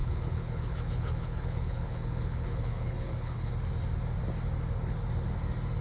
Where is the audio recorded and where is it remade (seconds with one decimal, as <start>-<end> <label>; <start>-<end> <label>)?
0.0-3.5 remade; 3.5-5.8 recorded

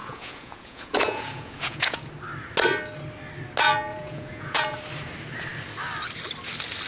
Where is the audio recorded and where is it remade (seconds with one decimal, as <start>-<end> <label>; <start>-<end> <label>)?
0.0-2.1 remade; 2.1-3.9 recorded; 3.9-4.8 remade; 4.8-6.9 recorded

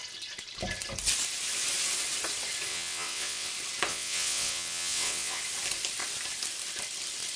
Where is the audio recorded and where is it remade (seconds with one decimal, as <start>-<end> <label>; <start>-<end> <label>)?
0.0-2.7 recorded; 2.7-3.5 remade; 3.5-3.9 recorded; 3.9-5.4 remade; 5.4-7.4 recorded

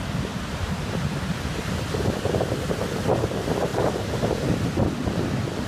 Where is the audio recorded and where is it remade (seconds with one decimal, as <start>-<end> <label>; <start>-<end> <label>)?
0.0-5.7 recorded